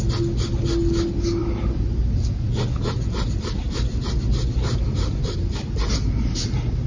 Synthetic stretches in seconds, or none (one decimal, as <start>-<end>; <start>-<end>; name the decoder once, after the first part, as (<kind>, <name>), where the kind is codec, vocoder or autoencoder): none